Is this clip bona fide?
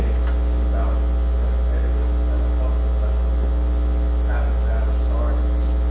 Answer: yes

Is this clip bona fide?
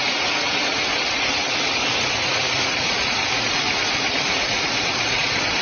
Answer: no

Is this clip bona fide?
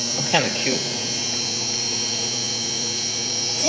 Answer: no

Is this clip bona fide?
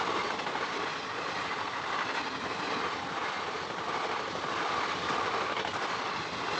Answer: yes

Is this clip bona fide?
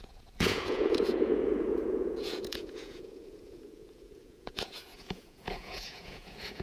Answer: no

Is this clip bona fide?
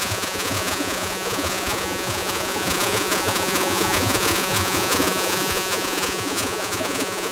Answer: no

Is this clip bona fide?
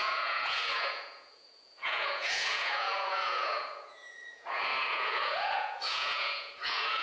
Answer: no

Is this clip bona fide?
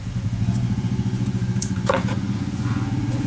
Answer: no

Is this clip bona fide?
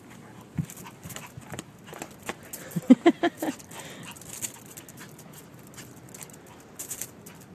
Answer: yes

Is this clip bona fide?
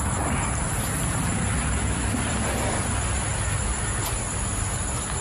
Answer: yes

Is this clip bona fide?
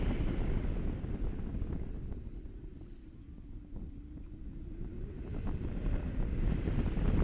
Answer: yes